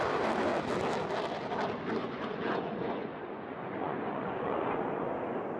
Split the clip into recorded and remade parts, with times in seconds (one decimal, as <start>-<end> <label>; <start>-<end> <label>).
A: 0.0-2.0 recorded; 2.0-5.1 remade; 5.1-5.6 recorded